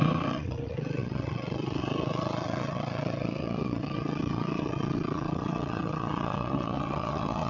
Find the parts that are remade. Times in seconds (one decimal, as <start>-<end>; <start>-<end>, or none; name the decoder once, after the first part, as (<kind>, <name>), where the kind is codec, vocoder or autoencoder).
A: 0.0-7.5 (vocoder, WaveNeXt)

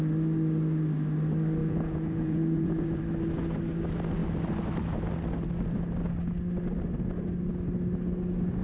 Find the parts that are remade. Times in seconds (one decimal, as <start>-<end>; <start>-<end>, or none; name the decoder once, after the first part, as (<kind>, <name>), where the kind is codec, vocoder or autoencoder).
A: 1.6-3.0 (vocoder, Vocos)

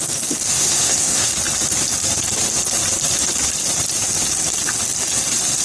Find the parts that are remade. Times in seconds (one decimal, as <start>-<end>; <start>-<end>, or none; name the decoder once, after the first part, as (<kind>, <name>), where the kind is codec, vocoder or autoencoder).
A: 0.5-1.3 (codec, SNAC)

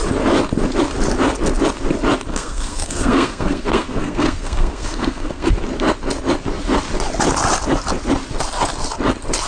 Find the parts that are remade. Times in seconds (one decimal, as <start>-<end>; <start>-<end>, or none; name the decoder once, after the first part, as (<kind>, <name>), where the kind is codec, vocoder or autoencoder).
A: 2.3-5.5 (codec, SNAC)

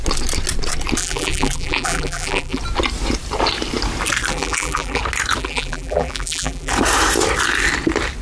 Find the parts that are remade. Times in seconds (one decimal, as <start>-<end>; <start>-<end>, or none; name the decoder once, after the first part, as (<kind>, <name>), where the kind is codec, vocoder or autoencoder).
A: 1.0-2.6 (vocoder, BigVGAN v2); 4.3-5.0; 5.4-6.7

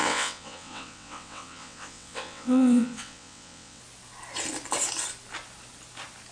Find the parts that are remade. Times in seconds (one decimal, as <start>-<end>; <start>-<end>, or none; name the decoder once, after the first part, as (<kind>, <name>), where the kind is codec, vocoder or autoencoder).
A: 0.0-3.8 (vocoder, WaveNeXt)

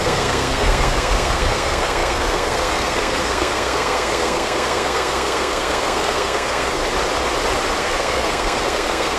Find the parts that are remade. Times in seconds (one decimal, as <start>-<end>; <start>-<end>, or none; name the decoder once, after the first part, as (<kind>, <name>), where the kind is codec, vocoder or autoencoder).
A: 0.0-6.8 (codec, SNAC); 7.8-9.2